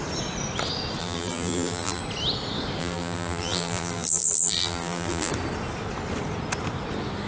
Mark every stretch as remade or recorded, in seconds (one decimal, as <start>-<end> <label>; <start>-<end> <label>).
0.0-1.0 recorded; 1.0-2.0 remade; 2.0-2.8 recorded; 2.8-5.3 remade; 5.3-7.3 recorded